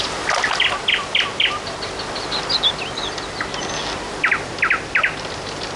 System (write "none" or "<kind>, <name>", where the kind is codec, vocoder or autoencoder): none